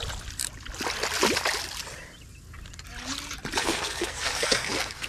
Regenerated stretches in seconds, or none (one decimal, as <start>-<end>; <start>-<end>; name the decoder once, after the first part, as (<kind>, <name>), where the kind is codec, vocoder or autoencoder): 3.6-5.1 (codec, SNAC)